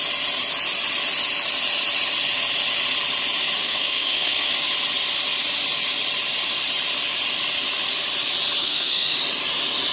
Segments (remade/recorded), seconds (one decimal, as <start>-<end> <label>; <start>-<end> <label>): 0.0-3.6 recorded; 3.6-4.5 remade; 4.5-8.6 recorded; 8.6-9.2 remade; 9.2-9.9 recorded